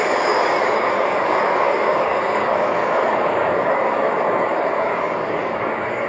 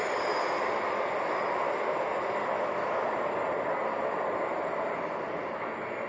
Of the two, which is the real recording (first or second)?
second